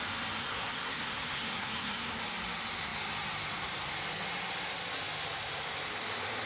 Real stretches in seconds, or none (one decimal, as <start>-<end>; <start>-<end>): 0.0-0.4; 2.2-6.5